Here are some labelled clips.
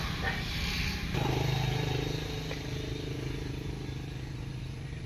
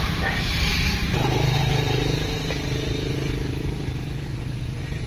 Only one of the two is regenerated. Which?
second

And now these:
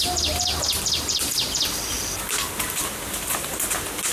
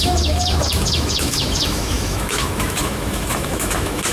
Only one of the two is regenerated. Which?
second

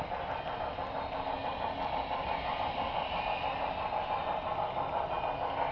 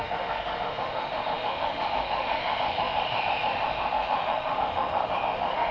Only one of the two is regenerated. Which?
second